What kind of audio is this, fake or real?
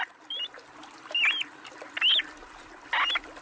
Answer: real